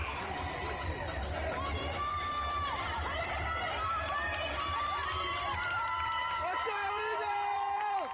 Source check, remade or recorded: remade